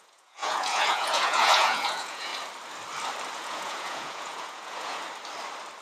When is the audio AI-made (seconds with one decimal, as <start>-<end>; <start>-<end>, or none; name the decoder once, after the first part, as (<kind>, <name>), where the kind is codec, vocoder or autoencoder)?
0.0-2.3 (vocoder, Vocos); 3.3-5.0